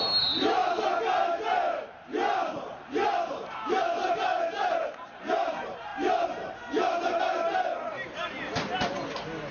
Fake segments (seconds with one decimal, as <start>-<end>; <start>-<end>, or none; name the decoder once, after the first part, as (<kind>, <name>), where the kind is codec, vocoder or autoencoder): none